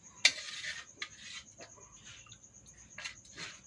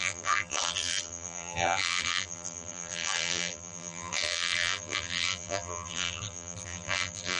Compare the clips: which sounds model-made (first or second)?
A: second